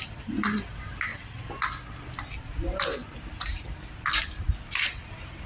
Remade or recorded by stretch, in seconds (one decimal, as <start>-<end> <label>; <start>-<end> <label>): 0.0-5.5 recorded